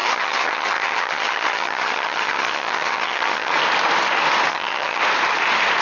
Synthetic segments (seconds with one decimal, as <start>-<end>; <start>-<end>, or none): 0.0-3.5; 4.5-5.0

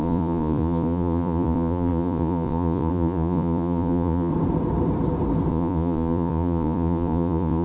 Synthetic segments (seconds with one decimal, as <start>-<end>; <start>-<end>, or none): 0.0-4.3; 5.5-7.6

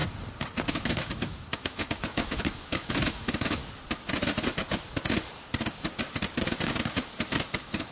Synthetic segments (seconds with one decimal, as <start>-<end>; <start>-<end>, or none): 0.7-3.6; 7.5-7.9

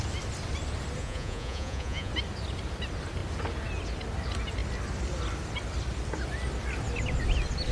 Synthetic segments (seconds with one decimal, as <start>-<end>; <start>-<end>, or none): 1.0-2.1

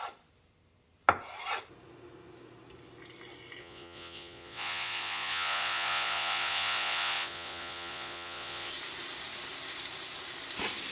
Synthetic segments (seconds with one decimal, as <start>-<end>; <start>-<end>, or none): 3.6-8.7

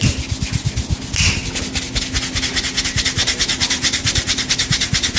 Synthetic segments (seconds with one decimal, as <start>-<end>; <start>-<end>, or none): 3.2-4.5

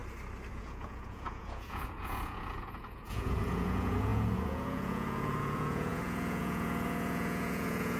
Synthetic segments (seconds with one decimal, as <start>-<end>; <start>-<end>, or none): 0.5-8.0

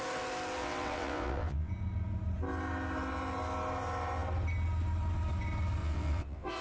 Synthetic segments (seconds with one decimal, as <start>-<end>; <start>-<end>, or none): 0.6-1.7; 5.8-6.6